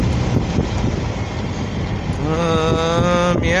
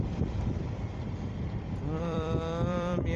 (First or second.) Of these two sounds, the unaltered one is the first